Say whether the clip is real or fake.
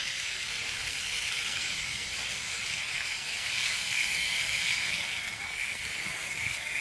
fake